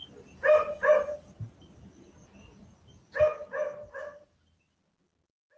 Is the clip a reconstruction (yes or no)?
no